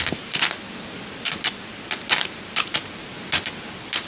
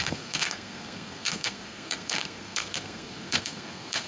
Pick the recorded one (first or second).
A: first